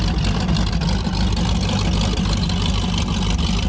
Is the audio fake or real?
real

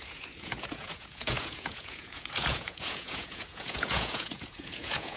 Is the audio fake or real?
fake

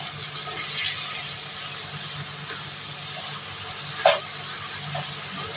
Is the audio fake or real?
real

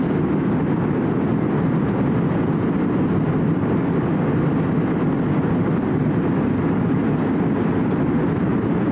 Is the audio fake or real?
real